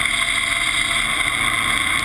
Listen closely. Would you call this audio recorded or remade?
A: recorded